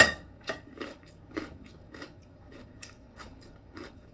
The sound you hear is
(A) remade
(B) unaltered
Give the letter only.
A